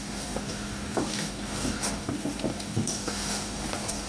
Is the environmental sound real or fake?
fake